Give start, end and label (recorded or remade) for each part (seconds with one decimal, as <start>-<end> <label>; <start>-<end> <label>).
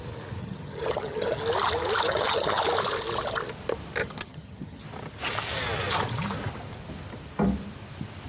0.0-0.4 recorded; 0.4-1.4 remade; 1.4-2.1 recorded; 2.1-2.6 remade; 2.6-4.0 recorded; 4.0-4.8 remade; 4.8-8.3 recorded